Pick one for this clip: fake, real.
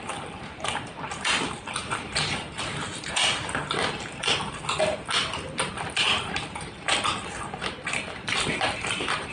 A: fake